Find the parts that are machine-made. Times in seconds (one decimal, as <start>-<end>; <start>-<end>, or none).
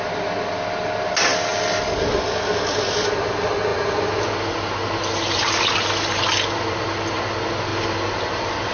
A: none